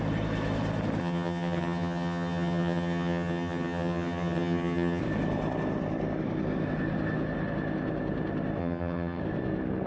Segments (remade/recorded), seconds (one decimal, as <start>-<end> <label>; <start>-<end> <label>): 0.0-1.0 recorded; 1.0-5.0 remade; 5.0-8.6 recorded; 8.6-9.2 remade; 9.2-9.9 recorded